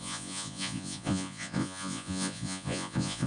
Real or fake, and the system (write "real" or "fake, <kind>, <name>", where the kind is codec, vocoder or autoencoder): fake, vocoder, Vocos